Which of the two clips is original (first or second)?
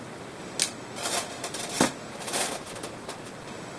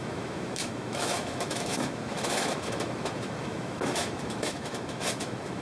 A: first